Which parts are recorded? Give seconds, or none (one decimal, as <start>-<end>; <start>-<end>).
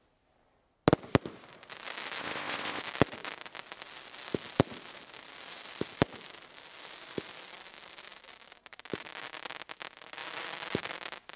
0.0-2.2; 2.8-11.4